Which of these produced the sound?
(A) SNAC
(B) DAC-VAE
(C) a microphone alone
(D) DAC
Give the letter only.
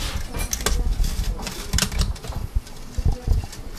C